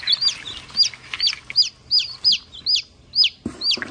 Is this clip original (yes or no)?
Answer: yes